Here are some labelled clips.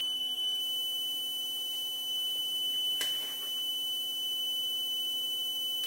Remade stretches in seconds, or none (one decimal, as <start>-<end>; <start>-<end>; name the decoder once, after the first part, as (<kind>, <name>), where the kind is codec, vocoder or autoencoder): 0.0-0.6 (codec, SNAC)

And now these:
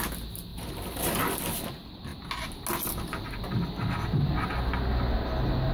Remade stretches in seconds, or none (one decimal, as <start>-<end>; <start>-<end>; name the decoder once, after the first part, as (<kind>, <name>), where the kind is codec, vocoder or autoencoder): 0.5-1.3 (vocoder, BigVGAN v2)

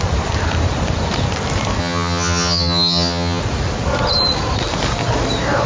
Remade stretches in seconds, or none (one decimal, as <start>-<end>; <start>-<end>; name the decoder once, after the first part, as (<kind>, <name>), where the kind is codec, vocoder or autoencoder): 1.8-3.4 (vocoder, HiFi-GAN)

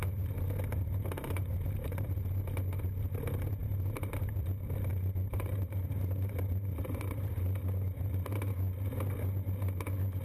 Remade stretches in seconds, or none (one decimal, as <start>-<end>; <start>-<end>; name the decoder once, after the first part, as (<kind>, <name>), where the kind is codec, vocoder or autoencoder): 0.7-2.1 (vocoder, BigVGAN v2); 3.6-4.3; 4.9-8.5

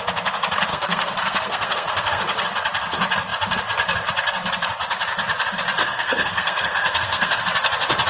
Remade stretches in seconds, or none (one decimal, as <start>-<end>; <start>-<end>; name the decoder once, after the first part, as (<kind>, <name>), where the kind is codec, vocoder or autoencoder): 0.7-2.2 (codec, SNAC); 5.8-7.4